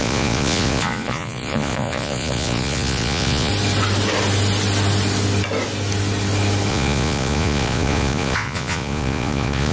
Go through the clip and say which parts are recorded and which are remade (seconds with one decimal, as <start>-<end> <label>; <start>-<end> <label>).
0.0-3.5 remade; 3.5-6.7 recorded; 6.7-9.7 remade